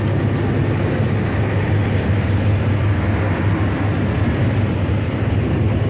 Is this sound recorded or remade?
recorded